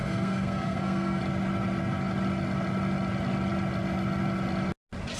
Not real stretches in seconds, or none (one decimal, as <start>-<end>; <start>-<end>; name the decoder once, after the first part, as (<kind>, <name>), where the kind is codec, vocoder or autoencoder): 0.0-1.2 (codec, SNAC)